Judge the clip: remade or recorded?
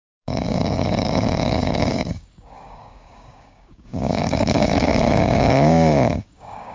remade